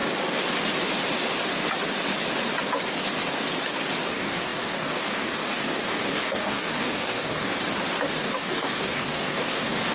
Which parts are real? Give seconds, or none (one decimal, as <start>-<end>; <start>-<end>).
0.0-4.1; 7.5-8.2